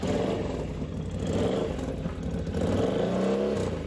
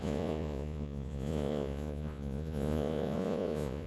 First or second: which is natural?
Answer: first